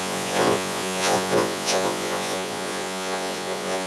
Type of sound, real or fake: fake